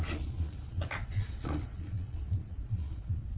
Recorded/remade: remade